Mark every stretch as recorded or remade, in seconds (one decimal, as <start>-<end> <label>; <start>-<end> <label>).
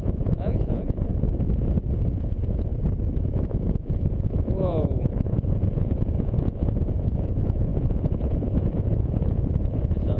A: 0.0-1.1 remade; 1.1-2.2 recorded; 2.2-2.7 remade; 2.7-3.3 recorded; 3.3-10.2 remade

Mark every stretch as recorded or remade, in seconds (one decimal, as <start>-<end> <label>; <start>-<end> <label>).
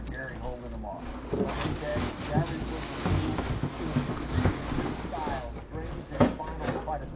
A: 0.0-7.2 recorded